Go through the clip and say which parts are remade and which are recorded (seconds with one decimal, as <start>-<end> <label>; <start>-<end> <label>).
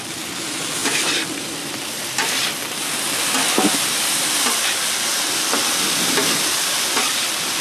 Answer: 0.0-5.1 remade; 5.1-5.8 recorded; 5.8-7.6 remade